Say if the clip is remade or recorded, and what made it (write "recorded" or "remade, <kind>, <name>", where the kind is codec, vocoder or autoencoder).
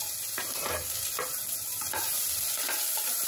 remade, vocoder, BigVGAN v2